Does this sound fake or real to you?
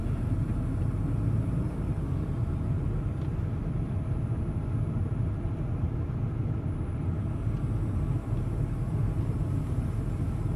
real